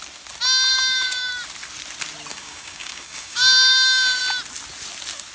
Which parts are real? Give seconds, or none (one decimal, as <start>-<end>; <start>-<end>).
0.0-0.7; 1.3-2.3; 4.2-5.3